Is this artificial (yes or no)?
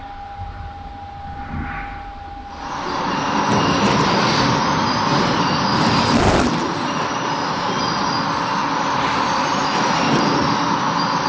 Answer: no